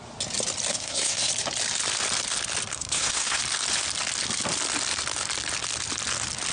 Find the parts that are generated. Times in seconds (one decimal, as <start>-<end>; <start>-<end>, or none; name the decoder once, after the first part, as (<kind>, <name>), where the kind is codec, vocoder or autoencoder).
0.7-1.3 (codec, SNAC); 2.7-3.4